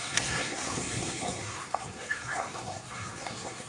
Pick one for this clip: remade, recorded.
remade